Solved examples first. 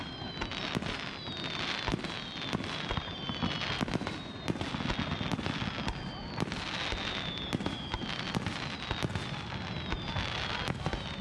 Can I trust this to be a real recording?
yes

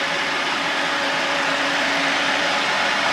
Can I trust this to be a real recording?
no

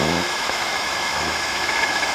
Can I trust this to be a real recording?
no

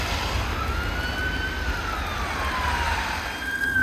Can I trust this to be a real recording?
yes